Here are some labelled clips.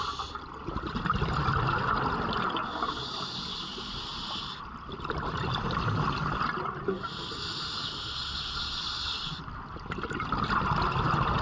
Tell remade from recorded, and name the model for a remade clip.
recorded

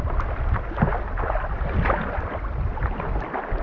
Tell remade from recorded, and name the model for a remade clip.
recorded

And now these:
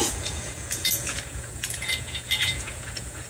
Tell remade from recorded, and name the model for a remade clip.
remade, vocoder, Vocos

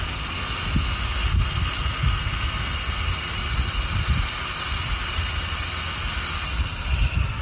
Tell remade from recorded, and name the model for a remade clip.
recorded